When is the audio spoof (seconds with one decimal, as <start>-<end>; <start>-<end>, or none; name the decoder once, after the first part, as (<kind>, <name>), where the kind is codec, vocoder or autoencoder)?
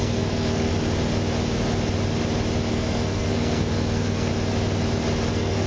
0.0-0.7 (codec, SNAC); 2.7-4.3; 5.3-5.7